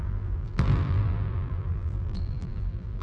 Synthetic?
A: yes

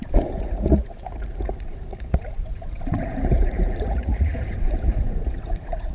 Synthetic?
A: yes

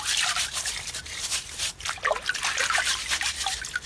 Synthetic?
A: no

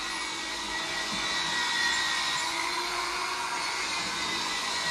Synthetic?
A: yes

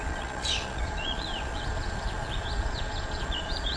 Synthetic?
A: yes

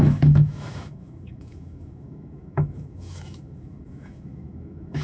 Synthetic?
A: yes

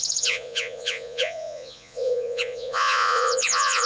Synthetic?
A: yes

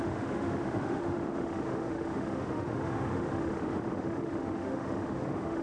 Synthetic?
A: yes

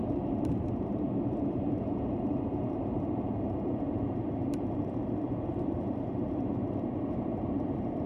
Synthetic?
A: yes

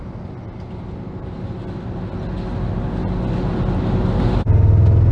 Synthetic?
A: no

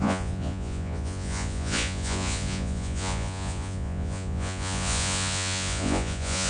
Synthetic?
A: yes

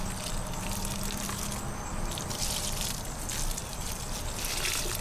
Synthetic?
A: no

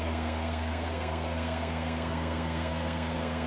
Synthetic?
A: yes